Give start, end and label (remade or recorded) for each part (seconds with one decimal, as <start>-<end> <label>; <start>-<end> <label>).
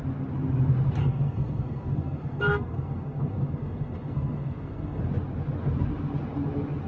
0.0-1.0 recorded; 1.0-5.0 remade; 5.0-6.9 recorded